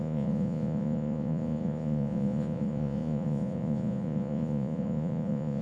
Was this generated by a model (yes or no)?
yes